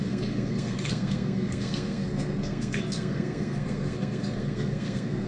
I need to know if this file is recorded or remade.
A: remade